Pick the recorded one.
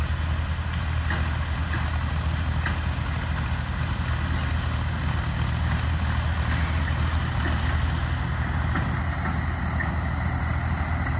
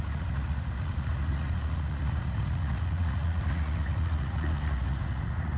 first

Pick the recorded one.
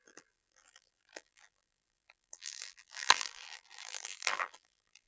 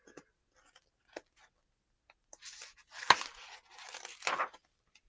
second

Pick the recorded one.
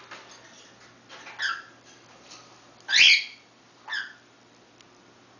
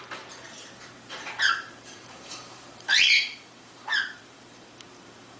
first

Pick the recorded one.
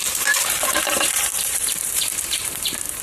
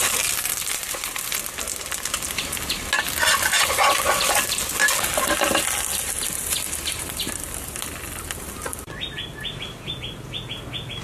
second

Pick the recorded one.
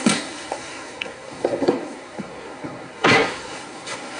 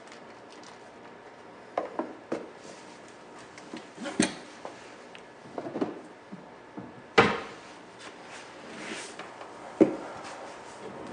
second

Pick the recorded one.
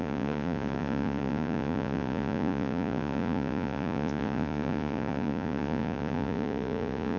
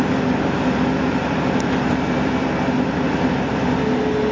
second